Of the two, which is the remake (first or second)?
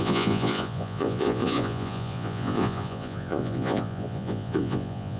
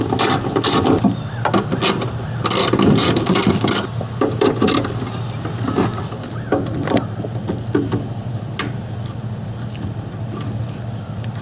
first